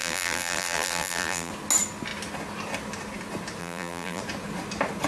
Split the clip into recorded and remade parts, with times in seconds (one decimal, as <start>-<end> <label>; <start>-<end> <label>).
0.0-1.5 remade; 1.5-3.6 recorded; 3.6-4.2 remade; 4.2-5.1 recorded